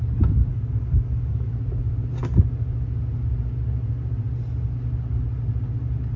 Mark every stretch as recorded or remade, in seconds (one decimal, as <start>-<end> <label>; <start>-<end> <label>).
0.0-0.5 recorded; 0.5-1.5 remade; 1.5-6.2 recorded

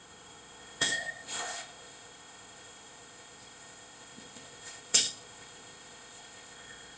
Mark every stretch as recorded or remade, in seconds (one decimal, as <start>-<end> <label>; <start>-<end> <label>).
0.0-7.0 remade